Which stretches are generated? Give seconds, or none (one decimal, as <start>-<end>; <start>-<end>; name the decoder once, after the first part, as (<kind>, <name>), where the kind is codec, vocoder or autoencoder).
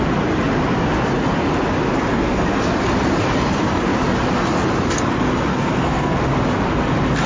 2.1-2.7 (codec, SNAC); 5.5-6.3